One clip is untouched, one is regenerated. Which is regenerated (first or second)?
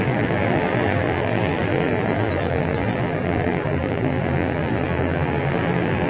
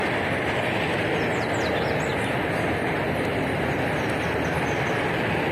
first